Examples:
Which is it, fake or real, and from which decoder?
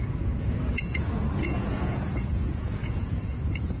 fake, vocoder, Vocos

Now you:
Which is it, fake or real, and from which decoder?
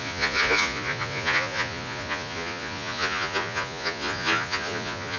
fake, vocoder, Vocos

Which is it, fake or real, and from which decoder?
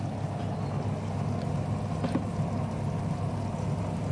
real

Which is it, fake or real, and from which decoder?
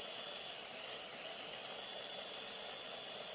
real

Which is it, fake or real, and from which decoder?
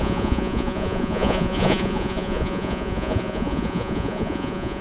fake, vocoder, Vocos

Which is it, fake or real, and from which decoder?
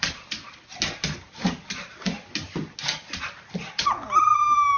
real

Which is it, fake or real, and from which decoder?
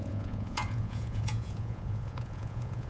fake, vocoder, Vocos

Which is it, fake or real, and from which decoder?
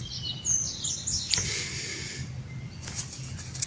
real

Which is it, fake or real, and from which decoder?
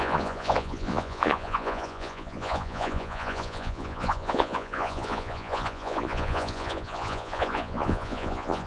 fake, vocoder, Vocos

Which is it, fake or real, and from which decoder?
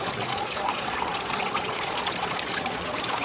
fake, vocoder, Vocos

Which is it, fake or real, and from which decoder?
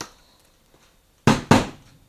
real